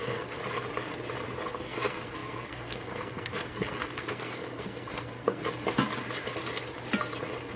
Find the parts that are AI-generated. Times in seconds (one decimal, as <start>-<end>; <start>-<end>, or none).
0.0-0.4; 1.5-5.4